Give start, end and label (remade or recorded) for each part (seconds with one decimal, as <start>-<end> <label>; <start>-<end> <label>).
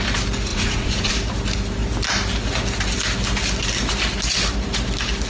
0.0-0.5 recorded; 0.5-1.1 remade; 1.1-5.3 recorded